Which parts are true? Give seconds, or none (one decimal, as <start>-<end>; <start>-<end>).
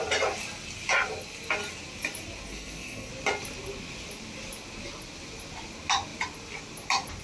0.0-2.5; 3.1-7.2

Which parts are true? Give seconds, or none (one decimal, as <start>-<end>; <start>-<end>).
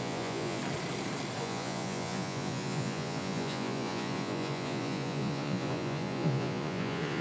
0.6-1.4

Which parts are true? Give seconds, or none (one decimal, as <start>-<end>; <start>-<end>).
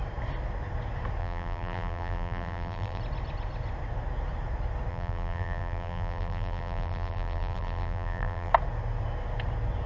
0.0-1.2; 3.0-4.9; 8.5-9.9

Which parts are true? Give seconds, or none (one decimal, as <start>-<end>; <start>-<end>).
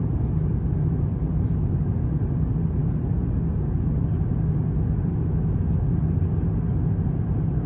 0.0-7.7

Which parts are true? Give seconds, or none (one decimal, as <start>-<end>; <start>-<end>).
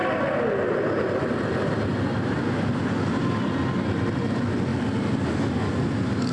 0.0-6.3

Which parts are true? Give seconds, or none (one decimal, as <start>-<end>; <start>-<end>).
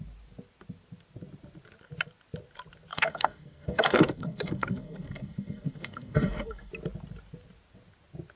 0.0-2.9; 6.7-8.4